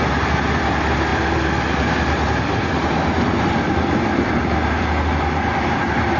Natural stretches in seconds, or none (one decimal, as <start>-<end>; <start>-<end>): 0.0-6.2